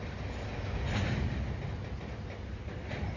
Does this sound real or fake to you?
real